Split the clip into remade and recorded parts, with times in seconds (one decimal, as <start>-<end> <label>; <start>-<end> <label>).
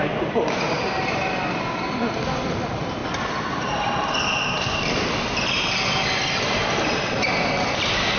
0.0-8.2 recorded